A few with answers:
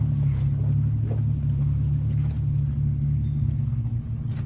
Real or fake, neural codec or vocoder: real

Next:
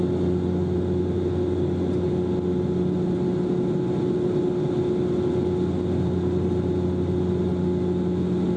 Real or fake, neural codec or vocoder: real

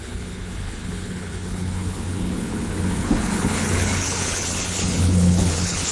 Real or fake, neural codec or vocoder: fake, codec, HILCodec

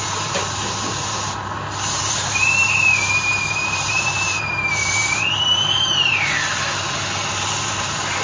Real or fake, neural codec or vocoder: fake, vocoder, BigVGAN v2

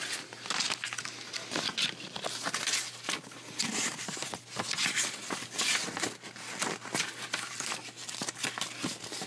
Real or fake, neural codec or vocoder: real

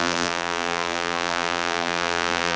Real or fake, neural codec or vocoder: fake, vocoder, BigVGAN v2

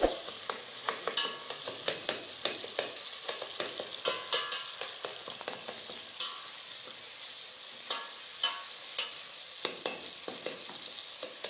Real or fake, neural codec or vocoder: real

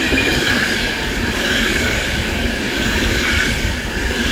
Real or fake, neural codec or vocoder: fake, codec, DAC